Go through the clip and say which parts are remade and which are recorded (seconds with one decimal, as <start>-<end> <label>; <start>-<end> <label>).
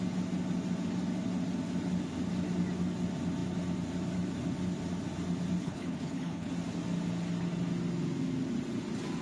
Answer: 0.0-5.6 recorded; 5.6-6.5 remade; 6.5-9.2 recorded